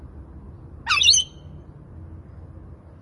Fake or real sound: real